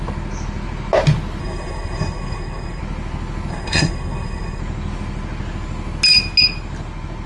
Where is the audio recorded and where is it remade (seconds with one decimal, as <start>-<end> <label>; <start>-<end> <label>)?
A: 0.0-1.4 recorded; 1.4-2.8 remade; 2.8-3.5 recorded; 3.5-4.6 remade; 4.6-7.3 recorded